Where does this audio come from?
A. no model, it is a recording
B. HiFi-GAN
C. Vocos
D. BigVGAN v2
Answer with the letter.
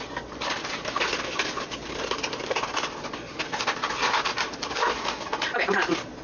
A